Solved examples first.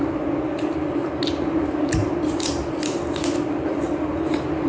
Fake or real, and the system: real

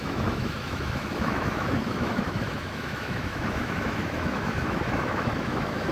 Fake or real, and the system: fake, autoencoder, DAC-VAE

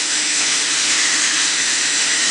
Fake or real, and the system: fake, autoencoder, DAC-VAE